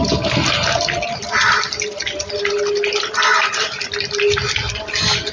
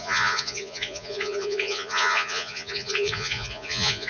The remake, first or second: second